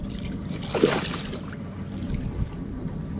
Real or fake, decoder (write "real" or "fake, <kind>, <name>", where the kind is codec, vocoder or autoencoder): real